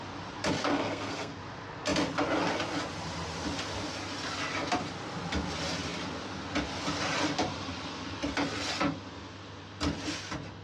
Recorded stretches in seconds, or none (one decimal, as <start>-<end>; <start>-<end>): 0.0-0.6; 1.4-10.6